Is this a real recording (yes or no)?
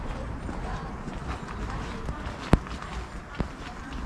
yes